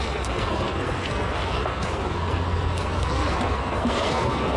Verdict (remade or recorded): remade